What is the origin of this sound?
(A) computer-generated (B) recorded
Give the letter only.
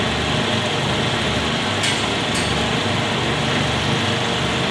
B